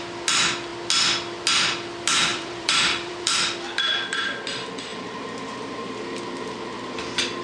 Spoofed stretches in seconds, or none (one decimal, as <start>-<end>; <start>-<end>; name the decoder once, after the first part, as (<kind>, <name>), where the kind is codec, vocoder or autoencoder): 2.3-3.3 (vocoder, BigVGAN v2); 4.9-6.2